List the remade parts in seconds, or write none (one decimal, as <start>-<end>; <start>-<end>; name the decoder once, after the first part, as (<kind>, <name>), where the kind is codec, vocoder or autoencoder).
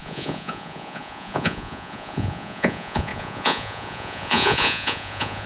0.0-5.5 (vocoder, Vocos)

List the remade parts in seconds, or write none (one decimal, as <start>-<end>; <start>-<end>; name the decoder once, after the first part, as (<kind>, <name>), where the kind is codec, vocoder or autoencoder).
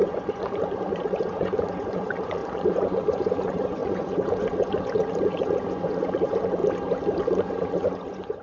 0.0-6.6 (vocoder, Vocos); 7.3-8.4